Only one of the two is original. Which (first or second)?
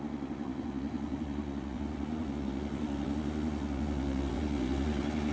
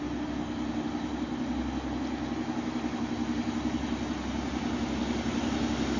second